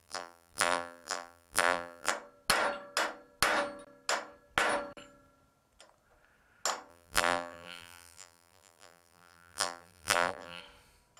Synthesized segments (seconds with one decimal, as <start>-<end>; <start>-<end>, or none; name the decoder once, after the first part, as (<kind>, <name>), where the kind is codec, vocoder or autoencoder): 0.0-2.1 (vocoder, BigVGAN v2); 6.9-10.6